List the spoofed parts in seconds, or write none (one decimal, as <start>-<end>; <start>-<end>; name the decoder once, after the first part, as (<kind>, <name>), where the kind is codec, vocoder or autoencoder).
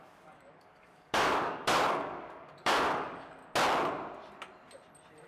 0.0-3.4 (codec, DAC)